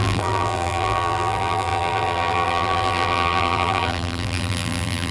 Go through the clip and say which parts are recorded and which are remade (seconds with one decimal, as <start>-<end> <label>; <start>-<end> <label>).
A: 0.0-5.1 remade